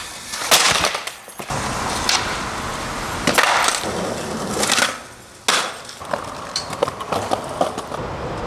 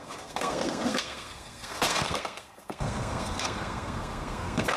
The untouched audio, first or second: first